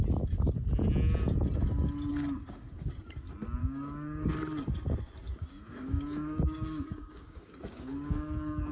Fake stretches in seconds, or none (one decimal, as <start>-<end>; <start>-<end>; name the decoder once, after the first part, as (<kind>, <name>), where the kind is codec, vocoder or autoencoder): 2.1-2.9 (codec, DAC); 3.6-4.3; 5.3-8.7